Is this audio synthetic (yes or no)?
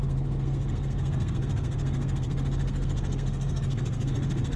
yes